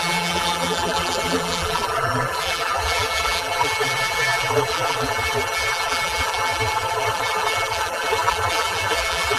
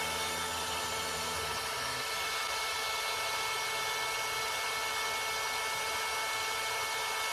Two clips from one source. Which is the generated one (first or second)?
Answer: first